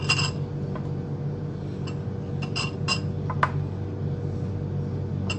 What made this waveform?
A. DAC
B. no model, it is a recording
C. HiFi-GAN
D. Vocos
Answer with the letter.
B